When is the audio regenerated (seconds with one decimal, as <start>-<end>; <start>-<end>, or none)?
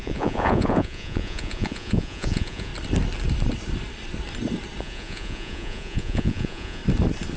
0.0-2.7; 4.8-6.8